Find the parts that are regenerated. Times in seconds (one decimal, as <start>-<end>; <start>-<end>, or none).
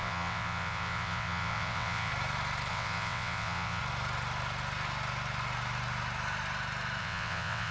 0.0-2.1; 2.7-3.8; 7.0-7.7